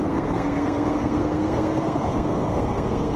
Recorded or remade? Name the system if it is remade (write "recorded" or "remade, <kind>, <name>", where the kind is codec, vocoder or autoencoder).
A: remade, codec, SNAC